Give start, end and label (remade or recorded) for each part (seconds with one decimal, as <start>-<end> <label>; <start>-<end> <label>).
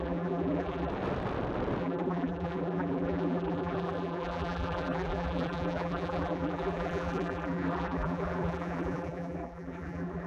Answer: 0.0-0.9 remade; 0.9-1.8 recorded; 1.8-10.3 remade